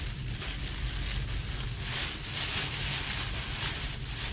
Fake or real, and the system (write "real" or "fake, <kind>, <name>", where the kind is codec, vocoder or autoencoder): real